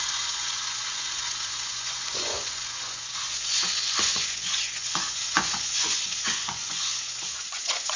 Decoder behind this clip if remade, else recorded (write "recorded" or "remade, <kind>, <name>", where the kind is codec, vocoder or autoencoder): remade, vocoder, Vocos